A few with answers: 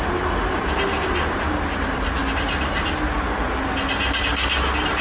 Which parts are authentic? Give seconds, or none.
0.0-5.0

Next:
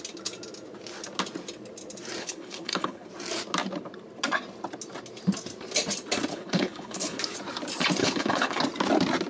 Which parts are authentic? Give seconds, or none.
0.0-2.2; 3.1-6.3; 7.2-8.0; 8.6-9.3

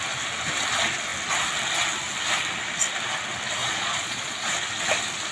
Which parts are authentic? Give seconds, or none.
0.0-3.6; 4.5-5.3

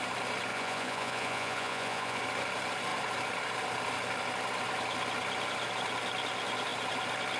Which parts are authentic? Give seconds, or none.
0.0-0.5; 2.2-7.4

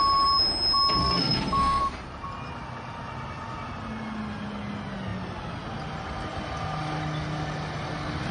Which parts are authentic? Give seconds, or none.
0.0-1.0; 1.8-8.3